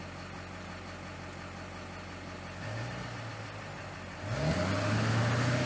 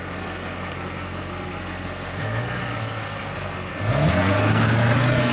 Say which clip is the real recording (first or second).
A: first